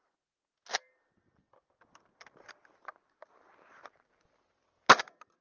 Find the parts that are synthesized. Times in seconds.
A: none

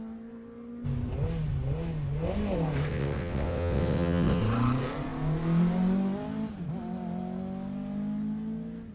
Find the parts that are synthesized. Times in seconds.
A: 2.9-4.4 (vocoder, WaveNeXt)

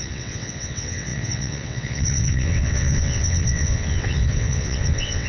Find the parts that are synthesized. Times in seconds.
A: 0.0-5.3 (vocoder, WaveNeXt)

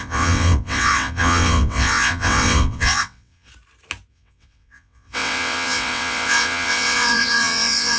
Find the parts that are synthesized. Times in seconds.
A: 0.0-3.5 (vocoder, WaveNeXt); 4.1-8.0

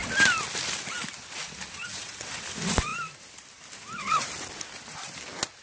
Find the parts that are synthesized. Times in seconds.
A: 1.8-2.3 (vocoder, WaveNeXt)